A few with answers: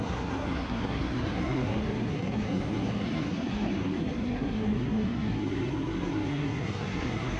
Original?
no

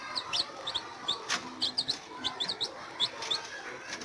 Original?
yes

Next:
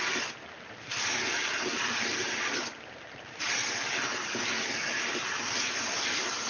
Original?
yes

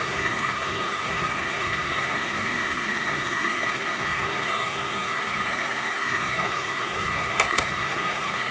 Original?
no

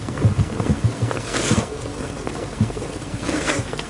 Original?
no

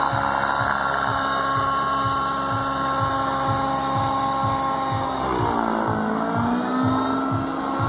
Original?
yes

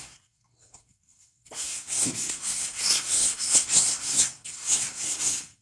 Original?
no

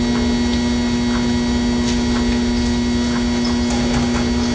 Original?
yes